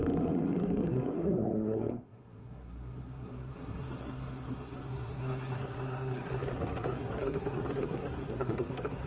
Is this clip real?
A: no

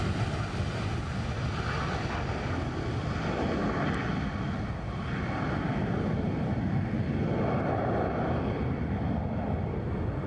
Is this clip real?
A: yes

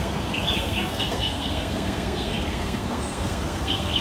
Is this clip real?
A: no